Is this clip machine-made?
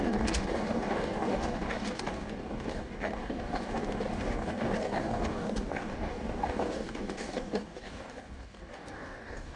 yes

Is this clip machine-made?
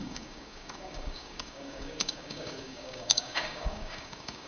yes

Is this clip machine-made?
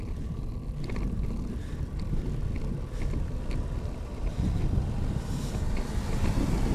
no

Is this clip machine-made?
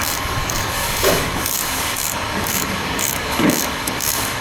yes